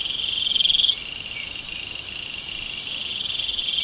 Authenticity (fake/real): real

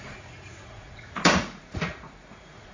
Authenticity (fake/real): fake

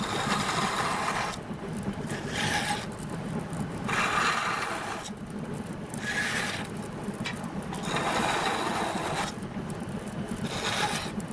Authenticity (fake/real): real